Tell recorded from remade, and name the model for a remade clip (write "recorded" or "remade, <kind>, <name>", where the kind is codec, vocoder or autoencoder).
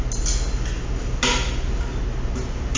recorded